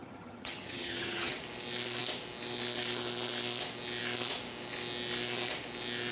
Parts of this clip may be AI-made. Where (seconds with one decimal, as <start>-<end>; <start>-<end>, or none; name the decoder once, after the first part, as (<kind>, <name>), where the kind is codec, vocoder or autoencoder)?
0.0-1.3 (vocoder, HiFi-GAN)